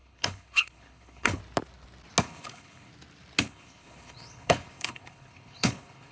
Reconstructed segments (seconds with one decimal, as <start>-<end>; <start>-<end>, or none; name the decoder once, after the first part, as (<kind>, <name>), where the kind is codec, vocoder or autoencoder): 0.0-1.4 (codec, HILCodec); 2.2-2.9; 3.4-6.1